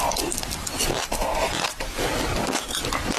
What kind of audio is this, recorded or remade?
recorded